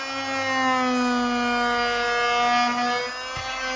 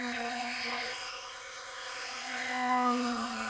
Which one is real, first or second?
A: first